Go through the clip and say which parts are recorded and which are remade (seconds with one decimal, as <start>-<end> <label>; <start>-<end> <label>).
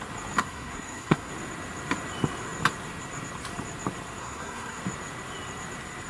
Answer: 0.0-0.4 recorded; 0.4-1.3 remade; 1.3-4.2 recorded; 4.2-4.8 remade; 4.8-6.1 recorded